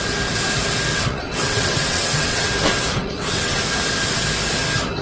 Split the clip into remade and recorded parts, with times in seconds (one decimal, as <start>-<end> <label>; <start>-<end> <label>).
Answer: 0.0-0.9 recorded; 0.9-2.5 remade; 2.5-2.9 recorded; 2.9-3.6 remade; 3.6-5.0 recorded